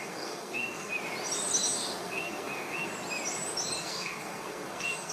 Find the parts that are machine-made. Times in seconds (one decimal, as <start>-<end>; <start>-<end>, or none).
0.0-0.9; 2.0-2.9; 3.8-5.1